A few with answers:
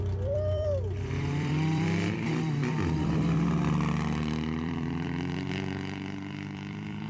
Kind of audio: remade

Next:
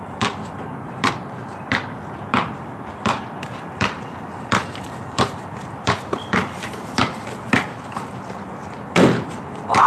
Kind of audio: remade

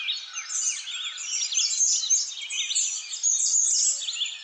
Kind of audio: recorded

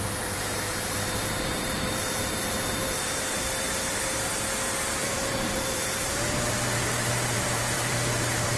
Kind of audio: remade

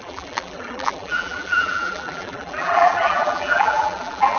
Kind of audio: remade